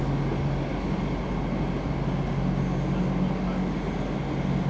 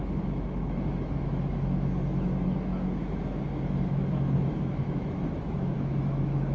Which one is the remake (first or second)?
second